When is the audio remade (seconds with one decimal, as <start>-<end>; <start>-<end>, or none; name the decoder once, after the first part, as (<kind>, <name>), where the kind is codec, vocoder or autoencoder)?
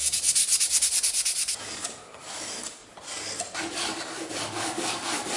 0.0-0.4 (codec, DAC); 1.6-2.8; 3.7-5.4